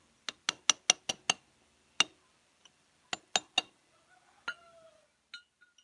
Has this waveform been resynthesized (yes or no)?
no